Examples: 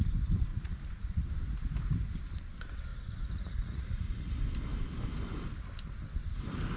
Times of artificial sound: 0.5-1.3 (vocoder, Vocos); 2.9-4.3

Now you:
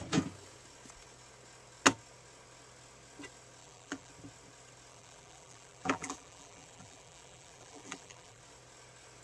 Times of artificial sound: 3.6-4.1 (vocoder, BigVGAN v2); 4.9-8.4

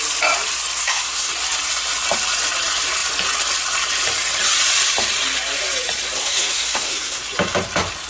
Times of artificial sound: 0.8-1.3 (codec, SNAC); 6.2-7.2

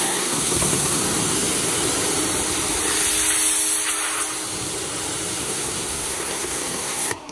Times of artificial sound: 0.0-1.0 (codec, SNAC); 5.4-7.3

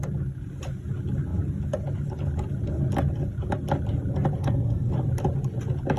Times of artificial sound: 4.4-4.9 (codec, SNAC)